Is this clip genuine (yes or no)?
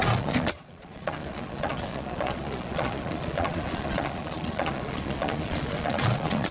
no